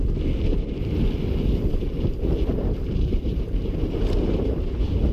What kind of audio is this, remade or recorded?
remade